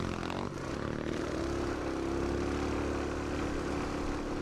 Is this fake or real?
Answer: real